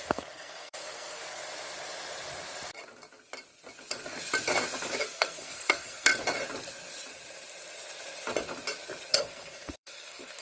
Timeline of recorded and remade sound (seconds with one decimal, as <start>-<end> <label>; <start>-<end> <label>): 0.0-1.2 remade; 1.2-5.0 recorded; 5.0-6.1 remade; 6.1-9.1 recorded; 9.1-10.4 remade

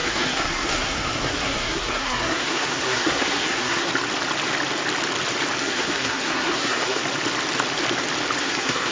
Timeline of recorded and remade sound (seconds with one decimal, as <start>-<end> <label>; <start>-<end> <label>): 0.0-3.9 remade; 3.9-5.6 recorded; 5.6-7.0 remade; 7.0-8.4 recorded; 8.4-8.9 remade